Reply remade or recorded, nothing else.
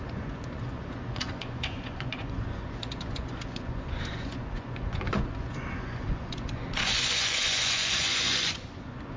remade